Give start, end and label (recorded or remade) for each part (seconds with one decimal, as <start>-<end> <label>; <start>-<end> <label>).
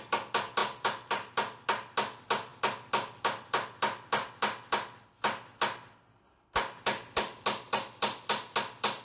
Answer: 0.0-0.6 recorded; 0.6-1.3 remade; 1.3-9.0 recorded